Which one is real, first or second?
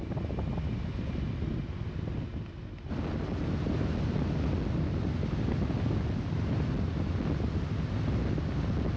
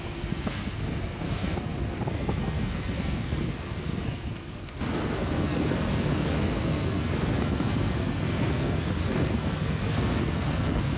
first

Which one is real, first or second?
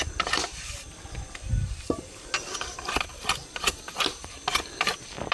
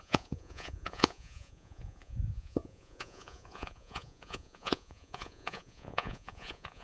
first